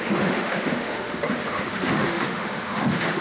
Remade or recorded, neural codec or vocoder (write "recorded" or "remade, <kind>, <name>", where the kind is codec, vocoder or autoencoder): remade, autoencoder, DAC-VAE